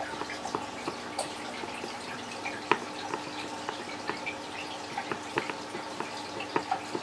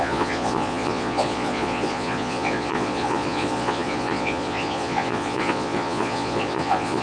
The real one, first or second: first